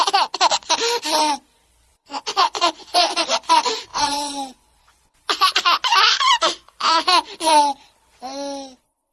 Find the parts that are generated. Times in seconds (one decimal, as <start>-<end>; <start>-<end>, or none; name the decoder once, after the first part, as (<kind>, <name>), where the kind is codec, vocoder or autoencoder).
1.9-2.8 (vocoder, Vocos); 3.9-7.6